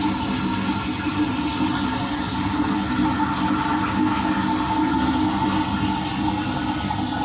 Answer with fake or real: real